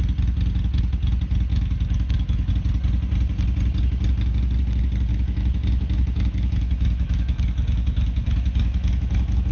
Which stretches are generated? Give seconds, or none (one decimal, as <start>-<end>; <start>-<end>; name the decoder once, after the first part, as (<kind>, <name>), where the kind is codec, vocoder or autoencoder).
1.5-2.5 (autoencoder, DAC-VAE); 5.1-9.5